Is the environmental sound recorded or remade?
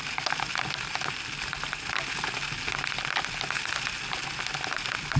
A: recorded